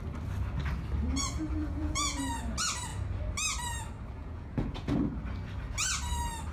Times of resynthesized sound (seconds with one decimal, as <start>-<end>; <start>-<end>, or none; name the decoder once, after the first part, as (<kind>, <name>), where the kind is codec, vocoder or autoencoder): 1.6-2.2 (vocoder, Vocos); 4.2-4.9